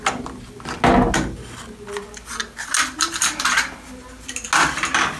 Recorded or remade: recorded